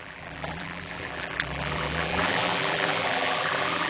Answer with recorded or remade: remade